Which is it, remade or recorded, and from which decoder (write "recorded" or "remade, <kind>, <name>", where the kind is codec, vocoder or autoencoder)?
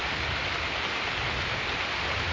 recorded